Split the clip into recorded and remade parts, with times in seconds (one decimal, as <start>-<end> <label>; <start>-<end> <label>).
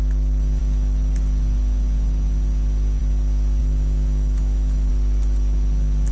0.0-3.6 recorded; 3.6-4.9 remade; 4.9-6.1 recorded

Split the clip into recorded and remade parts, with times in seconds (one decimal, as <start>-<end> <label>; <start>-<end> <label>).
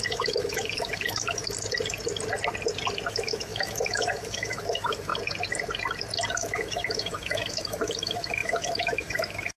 0.0-1.4 remade; 1.4-3.1 recorded; 3.1-5.1 remade; 5.1-6.3 recorded; 6.3-9.6 remade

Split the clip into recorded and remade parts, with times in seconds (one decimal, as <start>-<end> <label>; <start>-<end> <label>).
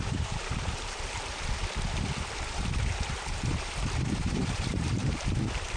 0.0-1.6 remade; 1.6-3.3 recorded; 3.3-5.8 remade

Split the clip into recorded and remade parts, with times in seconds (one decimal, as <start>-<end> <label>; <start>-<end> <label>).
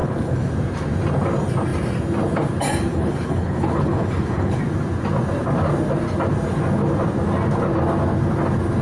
0.0-0.5 remade; 0.5-2.9 recorded; 2.9-4.6 remade; 4.6-8.8 recorded